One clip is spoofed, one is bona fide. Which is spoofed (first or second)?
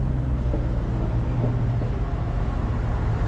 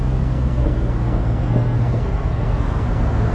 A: second